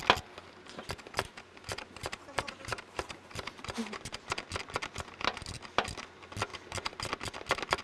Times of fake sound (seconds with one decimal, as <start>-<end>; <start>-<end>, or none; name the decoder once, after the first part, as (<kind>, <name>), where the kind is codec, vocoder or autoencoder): 2.0-4.4 (vocoder, BigVGAN v2); 6.5-7.1